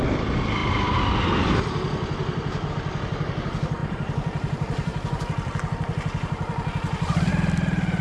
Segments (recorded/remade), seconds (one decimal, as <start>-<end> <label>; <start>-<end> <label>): 0.0-0.6 recorded; 0.6-2.7 remade; 2.7-3.8 recorded; 3.8-7.3 remade; 7.3-8.0 recorded